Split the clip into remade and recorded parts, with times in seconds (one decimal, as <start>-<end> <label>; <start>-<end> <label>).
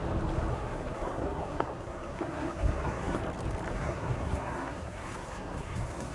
0.0-0.5 recorded; 0.5-3.2 remade; 3.2-3.7 recorded; 3.7-6.1 remade